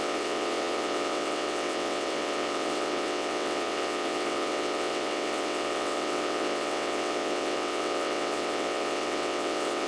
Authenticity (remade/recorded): remade